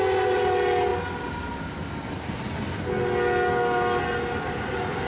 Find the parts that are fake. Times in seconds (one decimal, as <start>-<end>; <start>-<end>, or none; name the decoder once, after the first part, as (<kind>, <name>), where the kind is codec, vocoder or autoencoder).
none

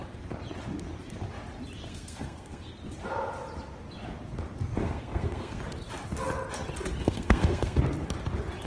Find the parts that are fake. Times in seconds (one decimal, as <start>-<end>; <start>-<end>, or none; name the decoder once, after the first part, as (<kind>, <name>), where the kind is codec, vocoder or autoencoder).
1.9-2.7 (codec, SNAC); 4.8-5.6; 7.0-7.8

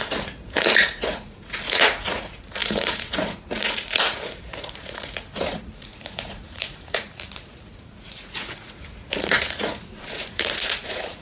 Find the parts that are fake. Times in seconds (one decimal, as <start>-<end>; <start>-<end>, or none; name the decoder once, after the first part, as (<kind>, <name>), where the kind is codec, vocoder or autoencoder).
0.0-11.2 (vocoder, Vocos)

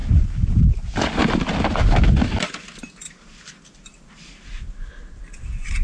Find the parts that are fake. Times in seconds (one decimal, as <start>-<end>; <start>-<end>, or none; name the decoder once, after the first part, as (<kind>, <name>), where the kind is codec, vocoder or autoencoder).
none

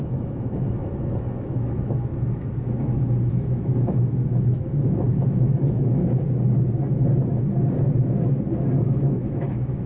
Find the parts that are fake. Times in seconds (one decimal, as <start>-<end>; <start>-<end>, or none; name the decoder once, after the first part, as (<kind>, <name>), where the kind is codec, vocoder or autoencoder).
0.0-6.0 (autoencoder, DAC-VAE); 8.8-9.9